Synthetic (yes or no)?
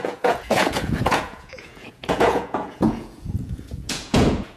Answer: yes